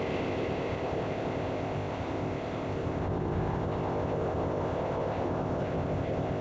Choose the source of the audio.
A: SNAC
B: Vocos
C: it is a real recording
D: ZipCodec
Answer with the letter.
D